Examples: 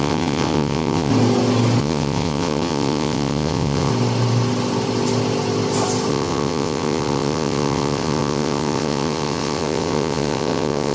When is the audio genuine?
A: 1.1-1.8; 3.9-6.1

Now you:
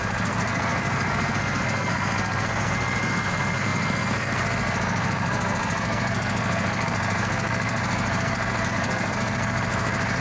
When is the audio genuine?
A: none

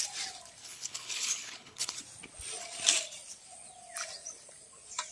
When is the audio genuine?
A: 0.0-0.6; 2.0-5.1

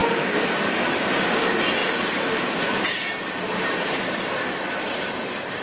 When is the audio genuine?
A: 1.1-1.8

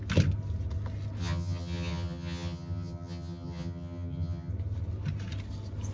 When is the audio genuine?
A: 0.0-1.2; 4.5-5.9

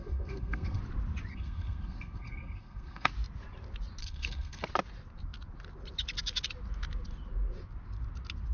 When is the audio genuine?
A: 0.8-1.3; 3.1-4.0; 4.6-8.5